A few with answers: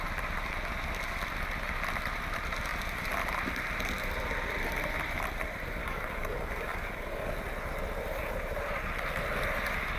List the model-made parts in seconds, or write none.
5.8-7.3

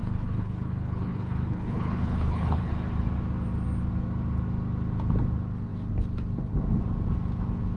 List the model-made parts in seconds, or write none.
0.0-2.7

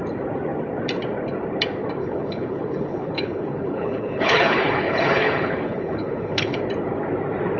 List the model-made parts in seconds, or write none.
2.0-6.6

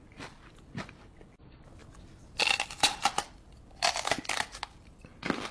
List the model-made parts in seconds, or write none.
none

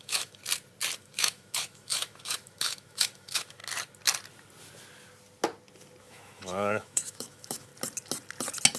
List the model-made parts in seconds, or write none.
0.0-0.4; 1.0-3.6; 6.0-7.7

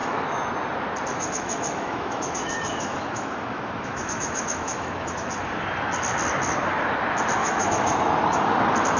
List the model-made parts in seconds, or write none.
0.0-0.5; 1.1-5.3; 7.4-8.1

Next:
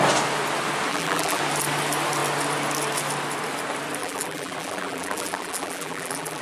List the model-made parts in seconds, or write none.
0.9-1.4; 4.0-6.4

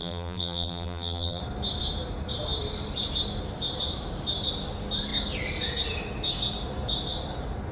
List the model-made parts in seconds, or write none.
0.0-1.4